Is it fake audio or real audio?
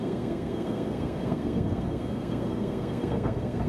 fake